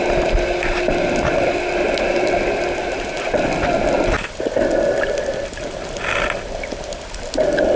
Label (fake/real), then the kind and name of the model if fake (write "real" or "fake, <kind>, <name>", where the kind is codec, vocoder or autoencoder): real